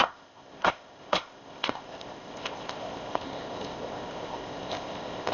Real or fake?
fake